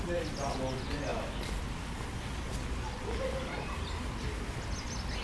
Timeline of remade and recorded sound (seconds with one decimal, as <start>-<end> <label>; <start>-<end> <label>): 0.0-5.2 recorded